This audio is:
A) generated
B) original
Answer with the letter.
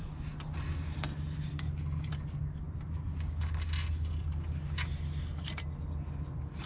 B